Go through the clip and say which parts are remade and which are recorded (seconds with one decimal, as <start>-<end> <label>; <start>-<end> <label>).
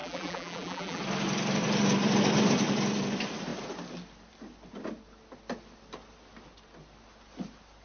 0.0-1.0 remade; 1.0-7.8 recorded